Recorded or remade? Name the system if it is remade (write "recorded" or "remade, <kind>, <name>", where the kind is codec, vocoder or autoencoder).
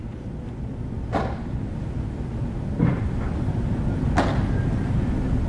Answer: recorded